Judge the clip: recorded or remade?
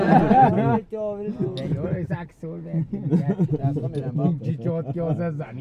recorded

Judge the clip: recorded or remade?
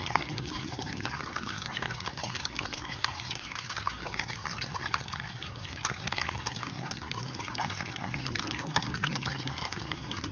remade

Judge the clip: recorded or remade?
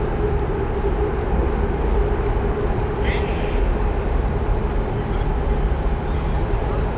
recorded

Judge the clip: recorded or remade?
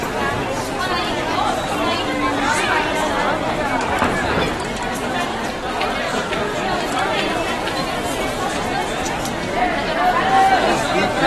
recorded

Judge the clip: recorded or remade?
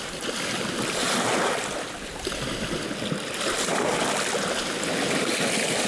recorded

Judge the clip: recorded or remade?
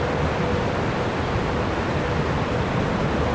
recorded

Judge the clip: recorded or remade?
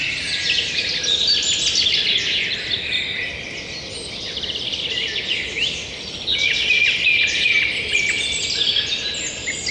recorded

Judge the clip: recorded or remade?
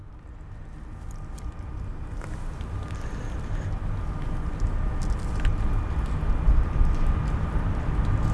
recorded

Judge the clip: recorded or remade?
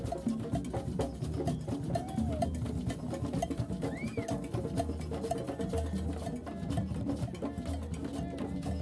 recorded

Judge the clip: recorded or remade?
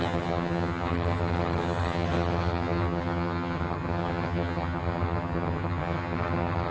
remade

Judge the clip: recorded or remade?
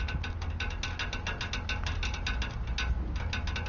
recorded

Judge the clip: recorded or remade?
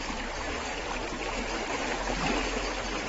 recorded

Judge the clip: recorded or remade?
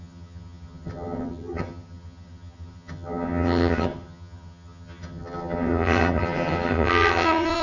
remade